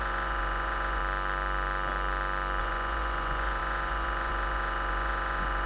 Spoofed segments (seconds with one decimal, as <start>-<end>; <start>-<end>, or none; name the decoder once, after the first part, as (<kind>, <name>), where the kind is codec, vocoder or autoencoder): 0.0-1.0 (vocoder, Vocos); 2.6-5.7